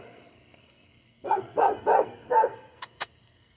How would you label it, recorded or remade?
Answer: remade